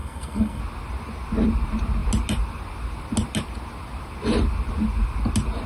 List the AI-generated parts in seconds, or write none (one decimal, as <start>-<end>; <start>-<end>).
0.0-0.6